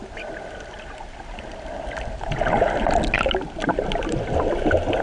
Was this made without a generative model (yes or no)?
yes